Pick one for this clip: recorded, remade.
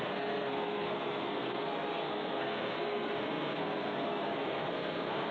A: remade